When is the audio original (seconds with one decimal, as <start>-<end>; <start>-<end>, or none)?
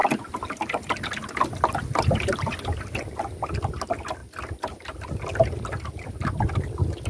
0.0-7.1